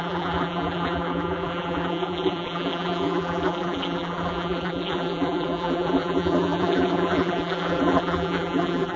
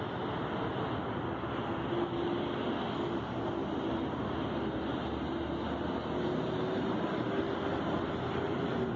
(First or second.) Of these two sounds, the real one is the second